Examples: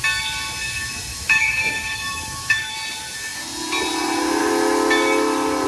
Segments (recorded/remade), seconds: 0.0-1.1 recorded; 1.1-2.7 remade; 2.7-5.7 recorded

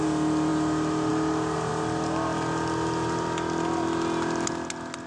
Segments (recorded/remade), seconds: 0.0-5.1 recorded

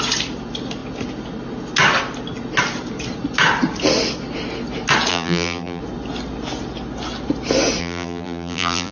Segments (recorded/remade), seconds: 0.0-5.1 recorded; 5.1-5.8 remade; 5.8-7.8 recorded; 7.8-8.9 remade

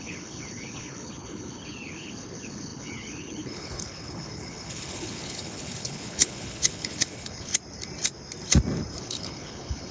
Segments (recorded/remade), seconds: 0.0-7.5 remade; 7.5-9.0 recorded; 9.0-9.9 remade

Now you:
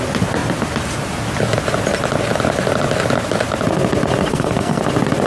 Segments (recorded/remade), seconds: 0.0-4.3 recorded; 4.3-4.8 remade; 4.8-5.3 recorded

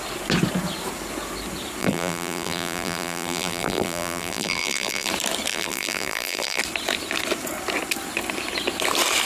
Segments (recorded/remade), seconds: 0.0-1.8 recorded; 1.8-5.1 remade; 5.1-5.5 recorded; 5.5-6.6 remade; 6.6-9.3 recorded

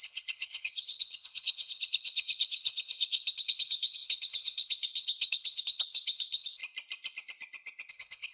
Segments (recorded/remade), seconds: 0.0-6.6 remade; 6.6-7.9 recorded; 7.9-8.3 remade